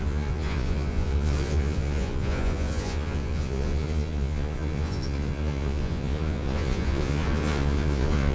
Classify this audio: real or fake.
fake